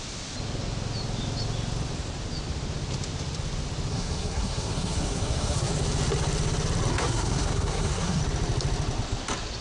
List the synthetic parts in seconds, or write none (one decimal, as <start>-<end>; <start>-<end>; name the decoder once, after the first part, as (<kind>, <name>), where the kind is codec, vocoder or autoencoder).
3.9-5.7 (codec, SNAC); 6.9-8.2